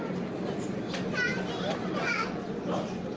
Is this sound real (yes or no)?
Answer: yes